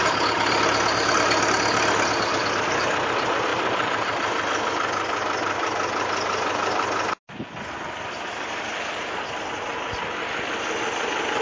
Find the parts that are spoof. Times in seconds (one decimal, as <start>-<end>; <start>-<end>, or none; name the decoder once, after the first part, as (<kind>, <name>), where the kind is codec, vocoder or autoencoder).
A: none